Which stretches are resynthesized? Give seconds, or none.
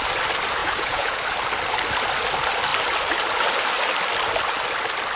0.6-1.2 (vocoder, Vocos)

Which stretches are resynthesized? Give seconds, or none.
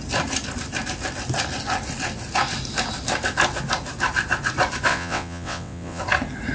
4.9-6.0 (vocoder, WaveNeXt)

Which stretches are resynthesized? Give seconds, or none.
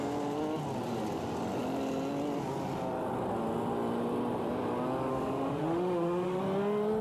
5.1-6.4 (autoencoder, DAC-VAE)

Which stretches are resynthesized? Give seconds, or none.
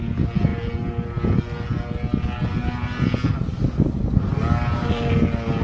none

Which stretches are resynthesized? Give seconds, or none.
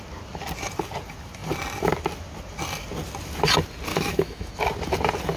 3.9-4.5 (autoencoder, DAC-VAE)